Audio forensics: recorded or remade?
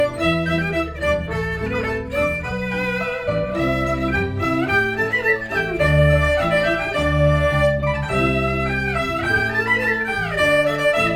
recorded